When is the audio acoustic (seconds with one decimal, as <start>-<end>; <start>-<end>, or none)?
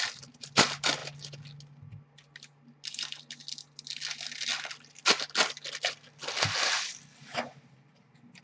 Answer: 0.0-8.4